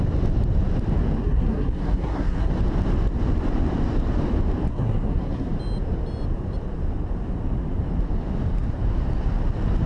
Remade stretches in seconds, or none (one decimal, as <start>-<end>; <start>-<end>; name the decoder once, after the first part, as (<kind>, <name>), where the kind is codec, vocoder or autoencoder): 1.2-2.5 (codec, SNAC); 4.7-5.5